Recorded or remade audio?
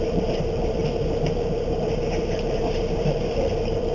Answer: remade